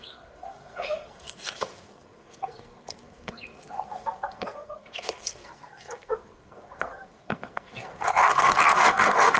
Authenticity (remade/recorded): remade